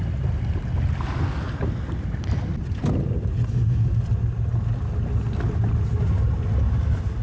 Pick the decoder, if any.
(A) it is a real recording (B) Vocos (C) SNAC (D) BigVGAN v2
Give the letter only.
A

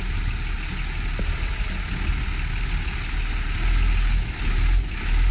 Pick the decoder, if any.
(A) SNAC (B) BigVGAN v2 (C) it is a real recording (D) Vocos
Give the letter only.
C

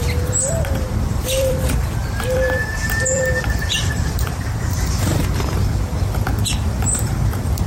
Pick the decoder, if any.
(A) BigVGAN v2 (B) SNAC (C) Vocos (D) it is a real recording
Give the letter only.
A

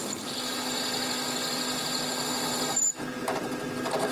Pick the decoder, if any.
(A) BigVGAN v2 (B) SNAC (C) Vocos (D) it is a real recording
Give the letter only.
D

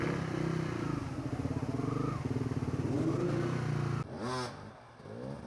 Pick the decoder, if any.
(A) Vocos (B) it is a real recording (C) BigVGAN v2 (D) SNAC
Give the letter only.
B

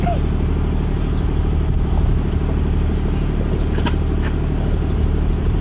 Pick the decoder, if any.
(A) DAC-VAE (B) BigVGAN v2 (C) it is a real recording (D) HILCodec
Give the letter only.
C